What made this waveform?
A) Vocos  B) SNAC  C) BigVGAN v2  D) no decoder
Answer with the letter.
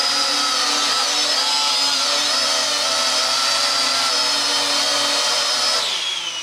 D